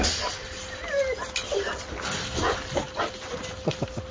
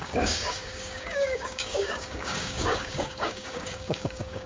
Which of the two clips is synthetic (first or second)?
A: second